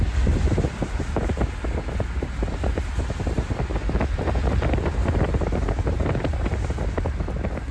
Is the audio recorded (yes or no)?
yes